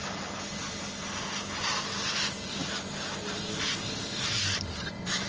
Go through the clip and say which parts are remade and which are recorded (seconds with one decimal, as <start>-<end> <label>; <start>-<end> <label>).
0.0-5.3 recorded